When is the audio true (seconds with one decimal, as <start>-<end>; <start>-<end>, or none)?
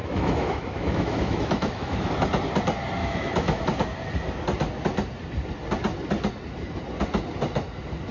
2.1-3.0; 3.6-8.1